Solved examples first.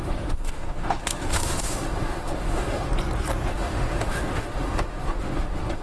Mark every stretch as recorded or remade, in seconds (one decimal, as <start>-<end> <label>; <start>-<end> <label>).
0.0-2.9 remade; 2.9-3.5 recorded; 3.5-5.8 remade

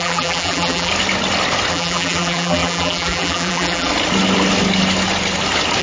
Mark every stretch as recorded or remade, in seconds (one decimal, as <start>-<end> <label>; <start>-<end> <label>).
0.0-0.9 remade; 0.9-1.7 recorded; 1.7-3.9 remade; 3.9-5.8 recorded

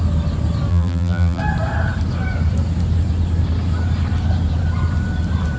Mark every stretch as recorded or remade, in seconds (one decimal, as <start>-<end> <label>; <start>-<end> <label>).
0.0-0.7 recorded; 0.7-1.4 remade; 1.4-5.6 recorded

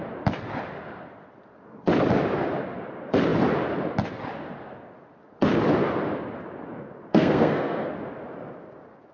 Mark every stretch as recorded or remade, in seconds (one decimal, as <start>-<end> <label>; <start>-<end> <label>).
0.0-7.1 recorded; 7.1-7.9 remade; 7.9-9.1 recorded

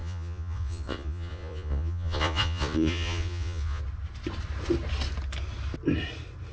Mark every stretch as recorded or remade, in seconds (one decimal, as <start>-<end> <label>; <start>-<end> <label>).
0.0-3.8 remade; 3.8-6.5 recorded

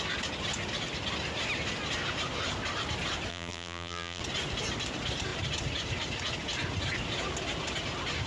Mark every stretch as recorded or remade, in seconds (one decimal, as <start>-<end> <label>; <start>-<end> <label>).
0.0-3.3 recorded; 3.3-4.2 remade; 4.2-8.3 recorded